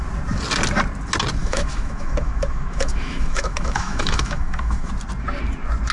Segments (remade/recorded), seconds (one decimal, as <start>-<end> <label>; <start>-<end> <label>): 0.0-1.4 recorded; 1.4-4.9 remade; 4.9-5.9 recorded